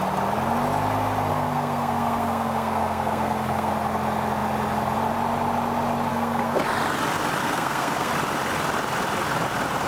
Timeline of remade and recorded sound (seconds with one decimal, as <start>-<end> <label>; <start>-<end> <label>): 0.0-1.3 recorded; 1.3-3.7 remade; 3.7-6.1 recorded; 6.1-6.6 remade; 6.6-7.4 recorded; 7.4-8.1 remade; 8.1-9.9 recorded